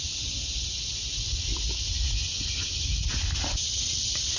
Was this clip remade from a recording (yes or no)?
no